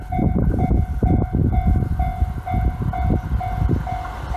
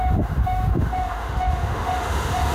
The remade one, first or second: second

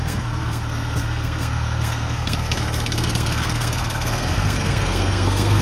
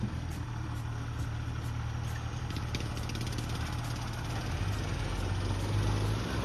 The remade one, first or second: first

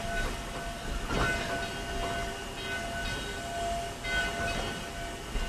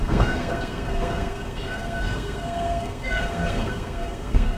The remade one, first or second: second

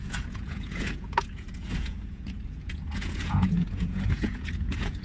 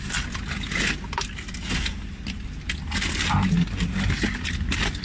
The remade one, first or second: first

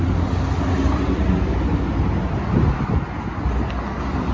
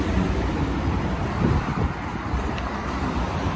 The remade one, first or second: second